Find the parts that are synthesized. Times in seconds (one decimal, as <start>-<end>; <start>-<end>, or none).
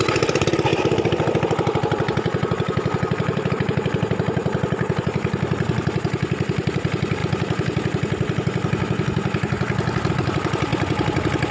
0.0-7.2; 10.1-10.7